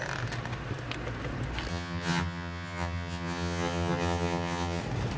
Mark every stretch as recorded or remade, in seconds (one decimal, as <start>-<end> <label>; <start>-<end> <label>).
0.0-1.7 recorded; 1.7-4.8 remade; 4.8-5.2 recorded